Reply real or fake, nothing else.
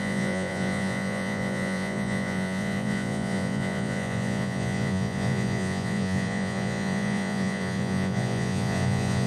fake